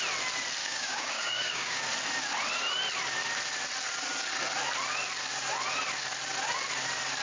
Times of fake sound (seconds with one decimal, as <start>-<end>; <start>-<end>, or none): 0.6-1.9